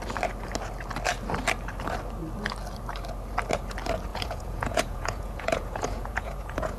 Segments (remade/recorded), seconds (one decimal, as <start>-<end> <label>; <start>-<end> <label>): 0.0-4.1 recorded; 4.1-6.8 remade